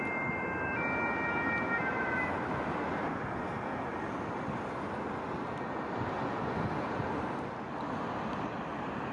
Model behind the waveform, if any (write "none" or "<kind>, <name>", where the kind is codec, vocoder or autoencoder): none